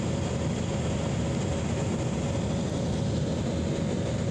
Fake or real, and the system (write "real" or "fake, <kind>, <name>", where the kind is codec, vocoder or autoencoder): real